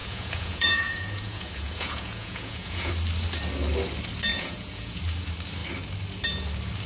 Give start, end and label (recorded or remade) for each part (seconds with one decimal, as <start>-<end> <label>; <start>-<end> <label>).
0.0-2.9 remade; 2.9-4.3 recorded; 4.3-5.0 remade; 5.0-6.9 recorded